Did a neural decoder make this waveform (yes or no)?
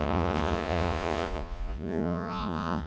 yes